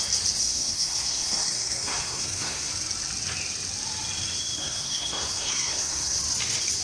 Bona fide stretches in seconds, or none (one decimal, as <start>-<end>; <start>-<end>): 0.0-0.4; 2.7-4.6; 6.2-6.8